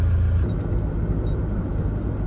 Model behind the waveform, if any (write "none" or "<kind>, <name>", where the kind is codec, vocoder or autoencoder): none